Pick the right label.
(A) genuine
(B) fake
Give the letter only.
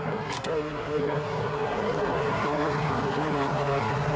B